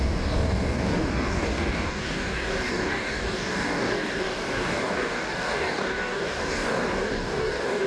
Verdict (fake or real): fake